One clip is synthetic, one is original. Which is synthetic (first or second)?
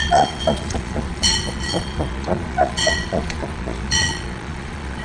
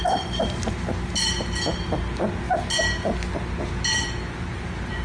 first